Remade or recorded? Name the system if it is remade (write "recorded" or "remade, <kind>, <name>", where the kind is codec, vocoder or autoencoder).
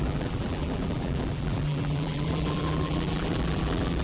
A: remade, vocoder, BigVGAN v2